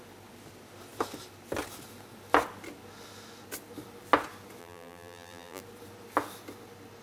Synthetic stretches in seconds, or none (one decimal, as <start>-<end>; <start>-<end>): 4.6-5.6